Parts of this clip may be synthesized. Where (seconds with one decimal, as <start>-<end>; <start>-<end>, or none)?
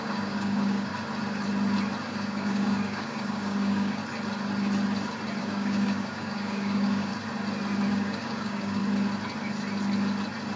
0.0-0.9; 2.1-4.0; 5.4-7.1; 7.9-8.8